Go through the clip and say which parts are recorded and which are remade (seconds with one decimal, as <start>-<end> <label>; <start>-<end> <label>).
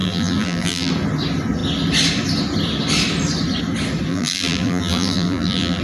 0.0-0.9 remade; 0.9-4.1 recorded; 4.1-5.8 remade